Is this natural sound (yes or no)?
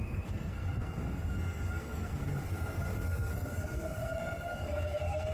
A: no